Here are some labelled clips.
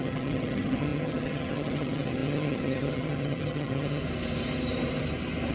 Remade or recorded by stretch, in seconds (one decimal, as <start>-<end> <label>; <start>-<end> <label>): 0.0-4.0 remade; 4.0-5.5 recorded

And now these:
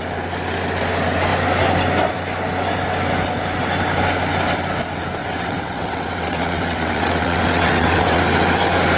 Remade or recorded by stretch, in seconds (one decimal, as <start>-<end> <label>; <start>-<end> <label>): 0.0-5.2 recorded; 5.2-8.2 remade; 8.2-9.0 recorded

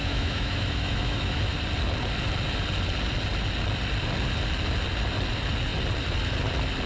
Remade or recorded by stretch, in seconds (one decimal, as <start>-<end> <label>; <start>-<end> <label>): 0.0-1.4 remade; 1.4-6.9 recorded

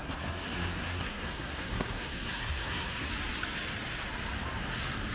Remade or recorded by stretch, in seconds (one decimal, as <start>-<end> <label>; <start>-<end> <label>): 0.0-3.1 remade; 3.1-5.1 recorded